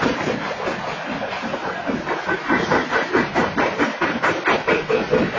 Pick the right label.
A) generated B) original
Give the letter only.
B